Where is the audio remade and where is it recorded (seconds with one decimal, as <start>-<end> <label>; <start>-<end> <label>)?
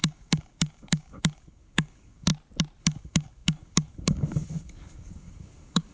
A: 0.0-2.3 remade; 2.3-2.8 recorded; 2.8-5.9 remade